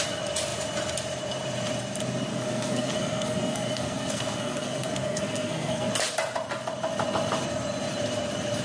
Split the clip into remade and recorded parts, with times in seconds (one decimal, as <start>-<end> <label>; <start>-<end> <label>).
0.0-2.3 recorded; 2.3-5.9 remade; 5.9-8.6 recorded